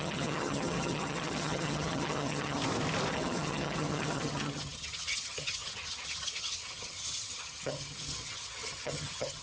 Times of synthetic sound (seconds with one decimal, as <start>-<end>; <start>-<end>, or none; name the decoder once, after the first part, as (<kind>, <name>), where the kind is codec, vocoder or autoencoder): 0.0-2.6 (vocoder, HiFi-GAN); 3.1-9.4